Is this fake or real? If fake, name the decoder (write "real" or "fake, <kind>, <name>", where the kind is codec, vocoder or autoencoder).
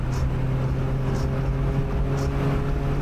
real